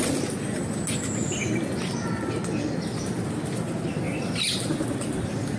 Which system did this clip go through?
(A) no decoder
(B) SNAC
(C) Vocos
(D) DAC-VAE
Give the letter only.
A